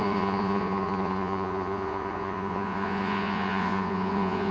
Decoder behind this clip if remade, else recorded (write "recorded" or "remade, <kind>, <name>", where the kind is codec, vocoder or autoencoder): remade, vocoder, Vocos